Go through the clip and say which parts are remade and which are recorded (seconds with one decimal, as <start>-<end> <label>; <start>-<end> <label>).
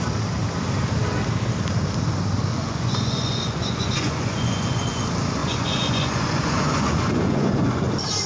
0.0-2.5 recorded; 2.5-5.0 remade; 5.0-5.4 recorded; 5.4-7.9 remade; 7.9-8.3 recorded